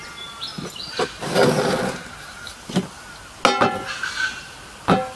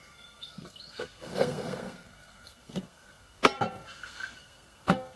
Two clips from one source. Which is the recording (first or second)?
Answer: first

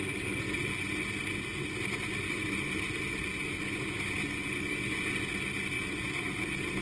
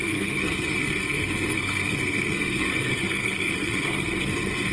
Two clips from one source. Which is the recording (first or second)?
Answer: first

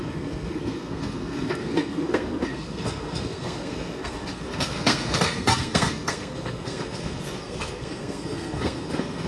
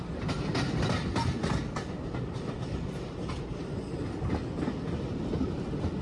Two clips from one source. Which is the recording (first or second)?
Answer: second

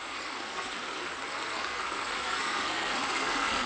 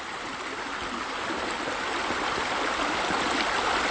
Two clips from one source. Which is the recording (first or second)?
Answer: second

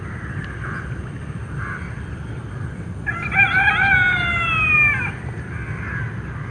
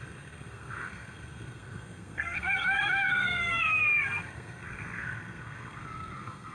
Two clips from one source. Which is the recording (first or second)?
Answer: first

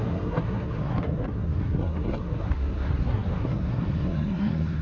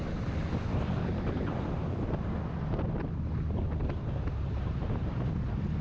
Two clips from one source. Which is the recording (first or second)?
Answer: second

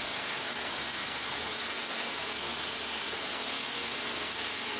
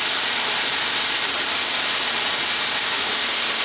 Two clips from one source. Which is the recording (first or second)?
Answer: second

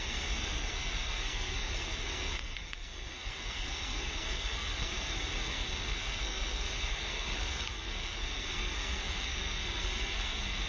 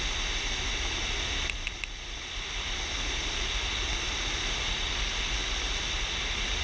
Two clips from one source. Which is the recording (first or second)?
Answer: second